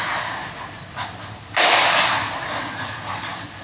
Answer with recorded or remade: recorded